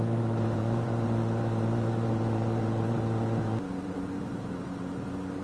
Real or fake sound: fake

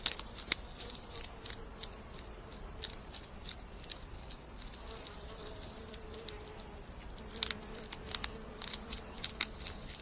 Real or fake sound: fake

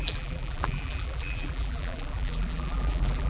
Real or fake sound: fake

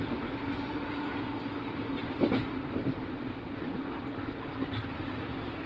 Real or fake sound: real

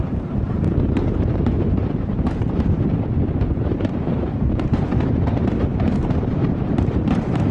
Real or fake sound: fake